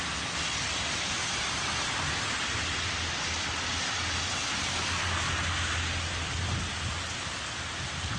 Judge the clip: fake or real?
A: real